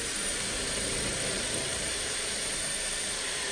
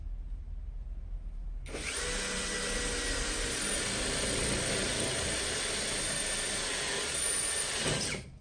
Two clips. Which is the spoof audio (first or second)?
first